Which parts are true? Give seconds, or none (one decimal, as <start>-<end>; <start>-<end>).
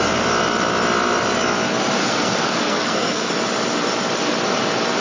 0.0-2.0; 3.3-5.0